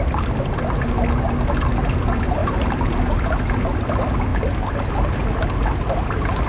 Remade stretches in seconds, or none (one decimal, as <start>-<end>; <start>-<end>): 2.4-2.9